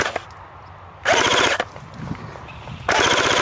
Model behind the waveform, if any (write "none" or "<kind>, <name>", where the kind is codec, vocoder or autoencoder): none